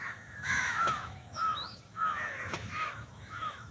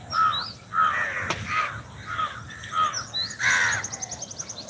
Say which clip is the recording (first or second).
second